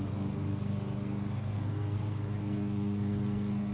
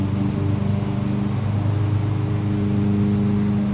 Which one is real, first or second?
second